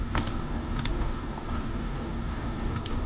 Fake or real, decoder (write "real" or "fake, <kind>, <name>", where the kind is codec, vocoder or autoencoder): fake, codec, DAC